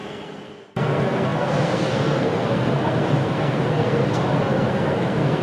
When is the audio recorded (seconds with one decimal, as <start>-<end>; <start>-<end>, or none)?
none